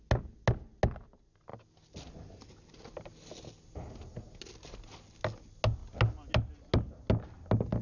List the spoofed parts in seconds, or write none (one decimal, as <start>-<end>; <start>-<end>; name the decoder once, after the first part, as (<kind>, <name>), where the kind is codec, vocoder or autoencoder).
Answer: none